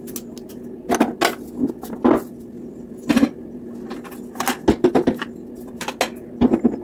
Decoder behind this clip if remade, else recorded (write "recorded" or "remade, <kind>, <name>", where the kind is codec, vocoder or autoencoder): recorded